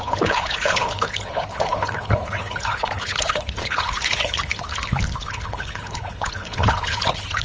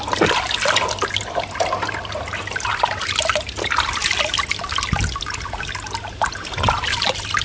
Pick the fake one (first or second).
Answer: first